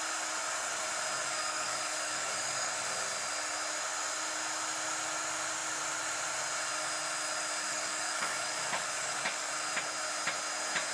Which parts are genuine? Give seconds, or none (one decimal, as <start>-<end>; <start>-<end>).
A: 0.0-1.2; 2.7-7.7; 9.5-10.9